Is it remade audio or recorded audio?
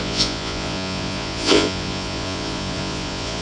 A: remade